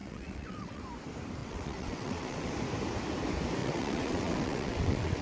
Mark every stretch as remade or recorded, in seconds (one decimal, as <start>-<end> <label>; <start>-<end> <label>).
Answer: 0.0-0.8 remade; 0.8-1.4 recorded; 1.4-2.5 remade; 2.5-3.6 recorded; 3.6-5.2 remade